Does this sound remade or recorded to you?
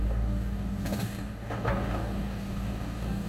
remade